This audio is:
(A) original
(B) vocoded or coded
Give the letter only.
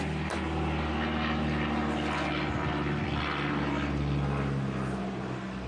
A